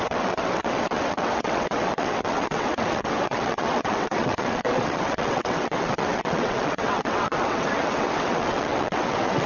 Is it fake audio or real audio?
fake